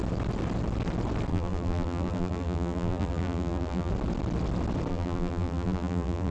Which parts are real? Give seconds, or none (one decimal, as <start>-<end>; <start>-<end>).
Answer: 0.0-1.3; 3.9-4.9